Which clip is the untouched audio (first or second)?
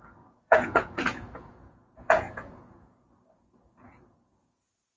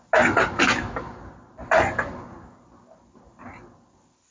second